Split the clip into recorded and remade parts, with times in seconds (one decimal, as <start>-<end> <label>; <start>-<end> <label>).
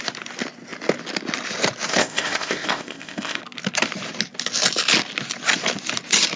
0.0-1.9 recorded; 1.9-3.4 remade; 3.4-6.4 recorded